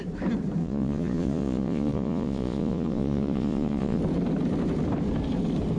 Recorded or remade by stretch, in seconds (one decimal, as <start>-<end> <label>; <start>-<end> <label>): 0.0-0.6 recorded; 0.6-4.0 remade; 4.0-5.8 recorded